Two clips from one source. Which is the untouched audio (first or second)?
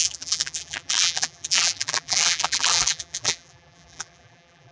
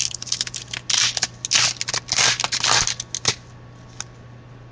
second